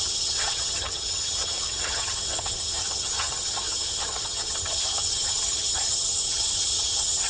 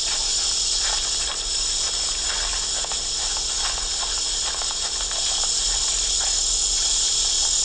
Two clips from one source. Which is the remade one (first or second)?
first